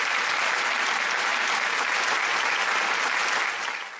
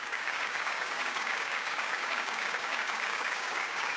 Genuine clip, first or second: first